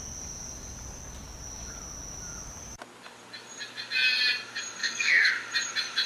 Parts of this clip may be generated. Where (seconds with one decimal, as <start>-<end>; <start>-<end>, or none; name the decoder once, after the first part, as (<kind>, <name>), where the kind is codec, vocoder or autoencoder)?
4.8-5.3 (codec, SNAC)